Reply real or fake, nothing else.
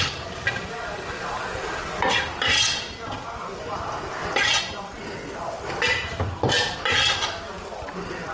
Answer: real